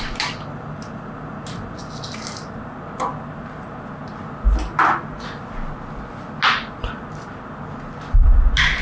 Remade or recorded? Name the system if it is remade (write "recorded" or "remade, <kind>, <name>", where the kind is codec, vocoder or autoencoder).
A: recorded